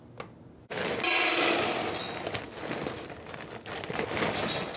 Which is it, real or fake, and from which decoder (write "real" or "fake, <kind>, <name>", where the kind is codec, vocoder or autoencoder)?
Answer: real